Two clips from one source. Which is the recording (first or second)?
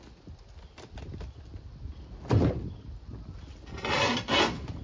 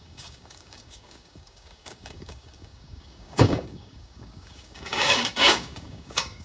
first